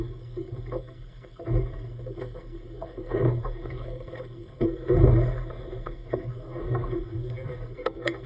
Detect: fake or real fake